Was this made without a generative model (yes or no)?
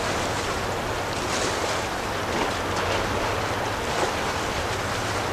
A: yes